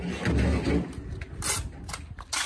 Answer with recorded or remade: recorded